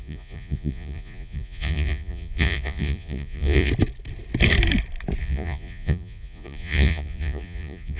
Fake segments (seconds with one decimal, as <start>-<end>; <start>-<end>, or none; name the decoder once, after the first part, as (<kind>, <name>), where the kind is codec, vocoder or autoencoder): 0.0-3.7 (vocoder, Vocos); 5.2-8.0